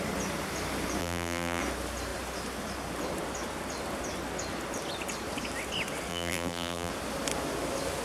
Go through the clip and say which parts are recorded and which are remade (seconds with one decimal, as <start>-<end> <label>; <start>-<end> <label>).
0.0-1.0 recorded; 1.0-1.6 remade; 1.6-6.1 recorded; 6.1-6.9 remade; 6.9-8.0 recorded